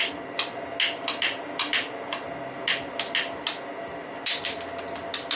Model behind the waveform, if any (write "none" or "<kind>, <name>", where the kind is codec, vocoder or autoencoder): none